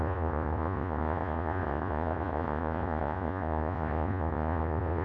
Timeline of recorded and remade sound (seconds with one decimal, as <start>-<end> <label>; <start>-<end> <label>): 0.0-5.0 remade